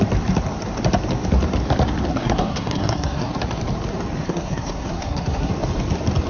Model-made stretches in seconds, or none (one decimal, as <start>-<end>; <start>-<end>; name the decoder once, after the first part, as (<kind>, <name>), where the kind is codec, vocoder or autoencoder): 2.1-3.3 (codec, SNAC); 4.2-5.5